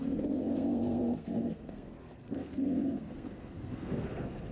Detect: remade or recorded remade